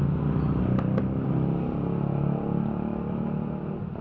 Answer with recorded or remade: recorded